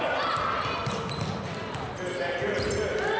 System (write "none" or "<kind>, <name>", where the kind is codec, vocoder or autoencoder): none